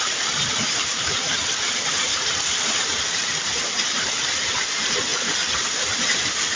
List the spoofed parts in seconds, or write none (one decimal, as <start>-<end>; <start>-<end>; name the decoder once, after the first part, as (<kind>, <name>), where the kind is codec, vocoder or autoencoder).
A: 0.0-5.1 (vocoder, BigVGAN v2); 5.7-6.6